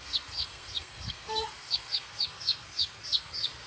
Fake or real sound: fake